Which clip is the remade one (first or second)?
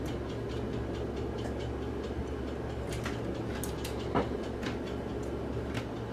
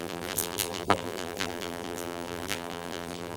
second